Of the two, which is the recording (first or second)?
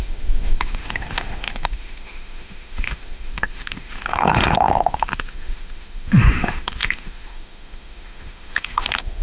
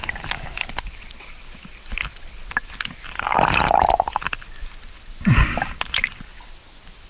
second